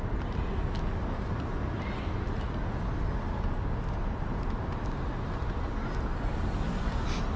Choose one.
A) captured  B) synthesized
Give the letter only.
A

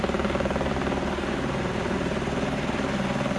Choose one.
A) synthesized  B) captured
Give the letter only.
B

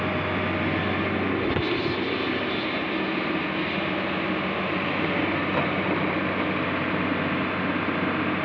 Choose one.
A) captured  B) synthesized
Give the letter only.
A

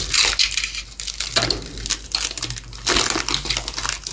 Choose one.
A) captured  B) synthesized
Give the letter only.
A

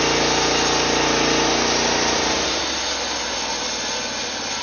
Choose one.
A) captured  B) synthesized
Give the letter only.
A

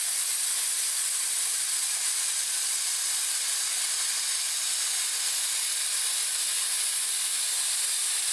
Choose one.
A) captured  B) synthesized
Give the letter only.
A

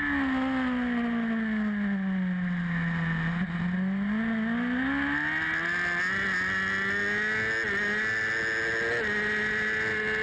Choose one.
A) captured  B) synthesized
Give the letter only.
A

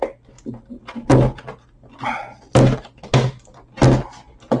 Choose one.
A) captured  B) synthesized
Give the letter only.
A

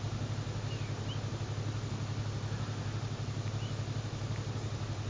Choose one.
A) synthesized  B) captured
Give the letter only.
B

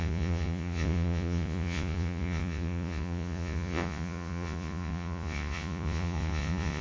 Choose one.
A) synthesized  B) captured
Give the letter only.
A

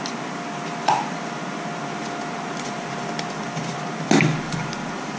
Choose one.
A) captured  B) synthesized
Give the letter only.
A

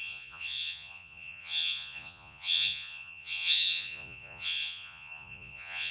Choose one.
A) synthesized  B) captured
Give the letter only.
A